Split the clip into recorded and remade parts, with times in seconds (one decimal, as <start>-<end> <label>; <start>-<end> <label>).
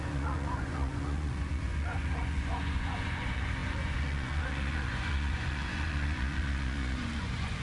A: 0.0-7.6 remade